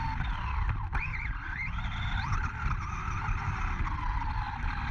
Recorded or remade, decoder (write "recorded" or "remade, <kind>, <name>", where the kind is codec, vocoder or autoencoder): recorded